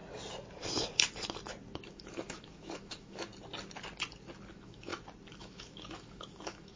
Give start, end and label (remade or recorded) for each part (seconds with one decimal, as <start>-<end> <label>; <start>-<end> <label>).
0.0-1.9 recorded; 1.9-3.3 remade; 3.3-4.5 recorded; 4.5-4.9 remade; 4.9-5.4 recorded; 5.4-6.8 remade